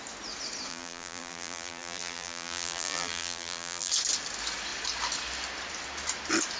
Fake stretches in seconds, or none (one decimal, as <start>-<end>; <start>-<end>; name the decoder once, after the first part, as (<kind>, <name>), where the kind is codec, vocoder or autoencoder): 0.7-3.9 (vocoder, BigVGAN v2)